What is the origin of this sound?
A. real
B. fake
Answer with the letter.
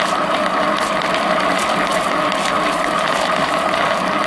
A